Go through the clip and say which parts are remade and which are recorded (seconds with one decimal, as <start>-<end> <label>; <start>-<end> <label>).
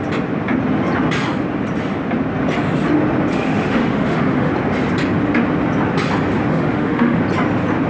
0.0-3.3 recorded; 3.3-4.5 remade; 4.5-6.5 recorded; 6.5-7.2 remade; 7.2-7.9 recorded